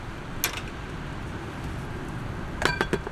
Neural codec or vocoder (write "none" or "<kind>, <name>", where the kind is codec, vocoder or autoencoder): none